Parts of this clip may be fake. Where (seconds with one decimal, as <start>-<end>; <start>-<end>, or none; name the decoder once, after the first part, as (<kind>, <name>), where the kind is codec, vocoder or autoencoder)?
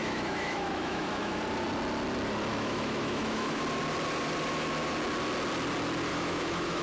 0.0-1.4 (autoencoder, DAC-VAE); 2.5-3.6; 6.1-6.8